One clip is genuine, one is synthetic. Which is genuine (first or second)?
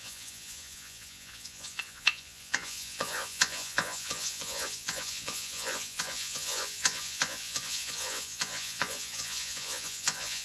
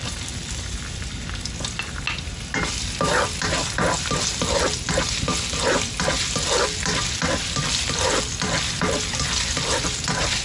second